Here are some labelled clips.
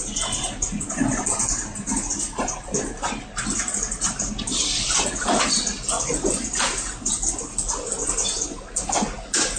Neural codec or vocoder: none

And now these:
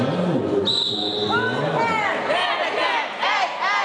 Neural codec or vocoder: none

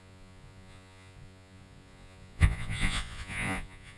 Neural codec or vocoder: vocoder, Vocos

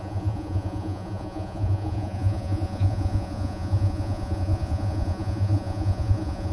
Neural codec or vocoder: vocoder, Vocos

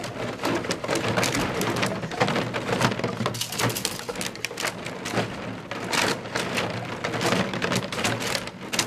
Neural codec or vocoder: none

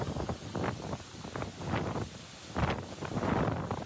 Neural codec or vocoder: none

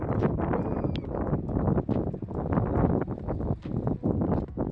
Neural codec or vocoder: none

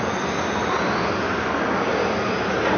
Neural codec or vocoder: none